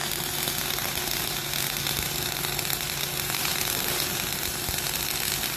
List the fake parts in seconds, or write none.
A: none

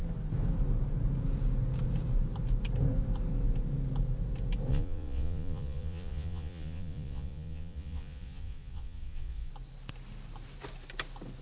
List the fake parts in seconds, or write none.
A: 4.7-9.5 (vocoder, Vocos)

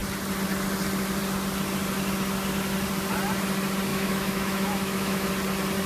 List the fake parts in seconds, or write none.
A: 3.9-5.3 (autoencoder, DAC-VAE)